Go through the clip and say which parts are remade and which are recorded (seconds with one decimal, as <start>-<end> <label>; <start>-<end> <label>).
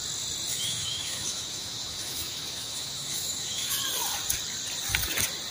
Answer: 0.0-0.5 recorded; 0.5-3.8 remade; 3.8-5.5 recorded